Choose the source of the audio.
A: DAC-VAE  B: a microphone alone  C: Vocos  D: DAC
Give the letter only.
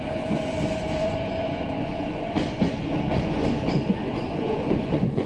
C